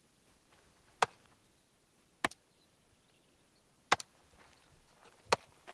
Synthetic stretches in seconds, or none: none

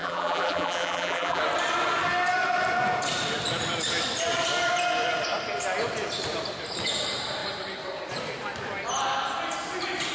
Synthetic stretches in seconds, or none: 0.0-1.4